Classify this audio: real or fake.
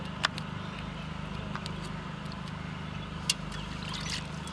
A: real